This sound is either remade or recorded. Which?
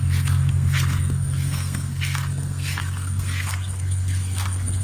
remade